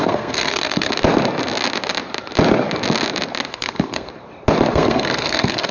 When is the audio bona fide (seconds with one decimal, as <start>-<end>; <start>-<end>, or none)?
0.9-3.5; 4.1-4.7